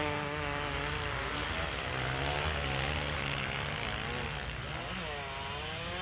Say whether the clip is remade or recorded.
recorded